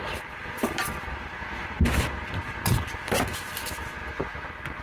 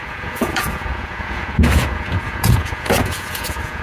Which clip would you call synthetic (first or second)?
second